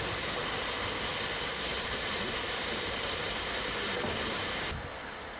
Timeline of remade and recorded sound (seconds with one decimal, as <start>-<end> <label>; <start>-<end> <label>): 0.0-1.7 recorded; 1.7-4.4 remade; 4.4-5.4 recorded